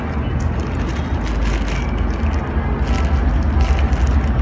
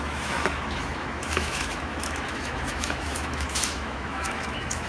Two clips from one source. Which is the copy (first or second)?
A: second